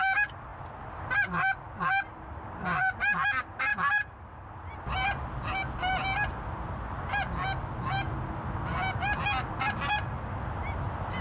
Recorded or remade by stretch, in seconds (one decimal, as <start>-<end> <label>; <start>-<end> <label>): 0.0-11.2 recorded